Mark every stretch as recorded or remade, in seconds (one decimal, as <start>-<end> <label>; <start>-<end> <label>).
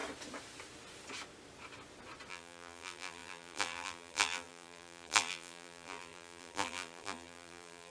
0.0-2.3 recorded; 2.3-7.9 remade